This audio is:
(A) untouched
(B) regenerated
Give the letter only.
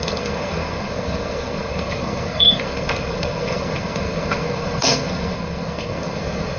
B